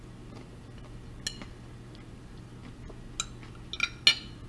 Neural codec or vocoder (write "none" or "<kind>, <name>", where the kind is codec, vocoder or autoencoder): none